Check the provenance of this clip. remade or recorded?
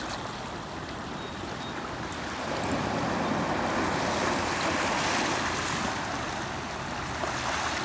recorded